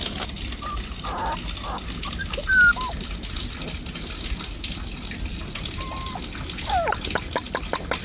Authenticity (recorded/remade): recorded